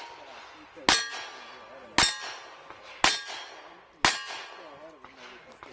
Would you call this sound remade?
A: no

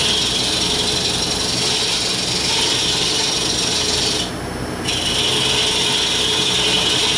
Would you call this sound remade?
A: no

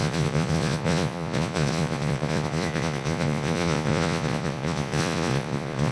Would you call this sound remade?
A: yes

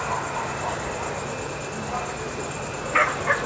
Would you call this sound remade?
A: no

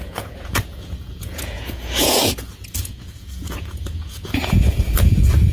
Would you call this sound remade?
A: yes